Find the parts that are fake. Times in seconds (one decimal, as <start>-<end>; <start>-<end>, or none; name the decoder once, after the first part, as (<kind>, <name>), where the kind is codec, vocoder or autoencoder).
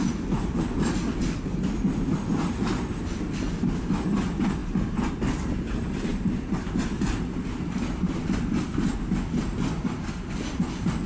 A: none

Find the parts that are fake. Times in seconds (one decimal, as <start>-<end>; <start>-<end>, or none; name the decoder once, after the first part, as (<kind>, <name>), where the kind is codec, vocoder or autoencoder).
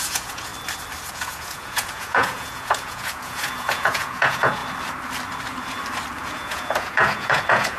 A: 0.0-0.5 (vocoder, Vocos); 1.1-4.6; 6.3-7.8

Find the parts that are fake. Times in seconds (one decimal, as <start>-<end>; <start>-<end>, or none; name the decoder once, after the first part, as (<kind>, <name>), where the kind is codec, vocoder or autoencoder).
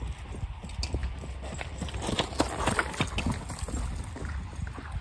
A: none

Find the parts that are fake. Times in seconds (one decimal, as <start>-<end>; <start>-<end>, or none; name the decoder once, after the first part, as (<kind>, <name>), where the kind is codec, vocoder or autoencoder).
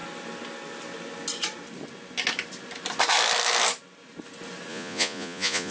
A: 4.7-5.7 (vocoder, Vocos)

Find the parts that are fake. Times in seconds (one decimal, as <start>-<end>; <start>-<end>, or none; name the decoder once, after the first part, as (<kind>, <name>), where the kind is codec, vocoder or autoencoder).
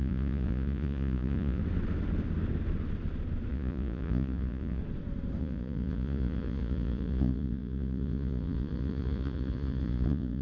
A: 0.0-1.6 (vocoder, Vocos); 3.5-4.8; 5.4-10.4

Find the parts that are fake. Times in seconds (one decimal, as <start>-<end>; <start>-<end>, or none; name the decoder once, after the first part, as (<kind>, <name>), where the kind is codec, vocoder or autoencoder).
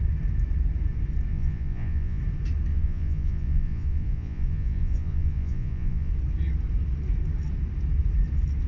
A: 1.3-2.2 (vocoder, Vocos); 2.7-6.1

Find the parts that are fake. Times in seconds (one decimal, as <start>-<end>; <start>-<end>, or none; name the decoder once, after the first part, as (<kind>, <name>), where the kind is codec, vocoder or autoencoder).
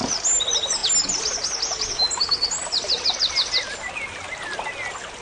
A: none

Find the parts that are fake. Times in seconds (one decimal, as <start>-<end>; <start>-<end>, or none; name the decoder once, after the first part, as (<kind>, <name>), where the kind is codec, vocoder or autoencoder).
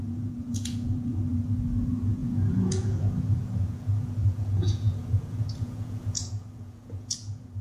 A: 0.0-7.6 (vocoder, Vocos)